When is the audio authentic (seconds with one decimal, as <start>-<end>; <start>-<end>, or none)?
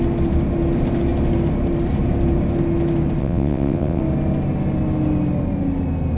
0.0-3.2; 4.0-6.2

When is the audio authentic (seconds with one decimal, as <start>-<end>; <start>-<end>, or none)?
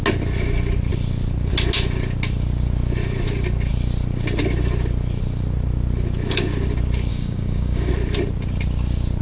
0.0-7.1; 7.9-9.2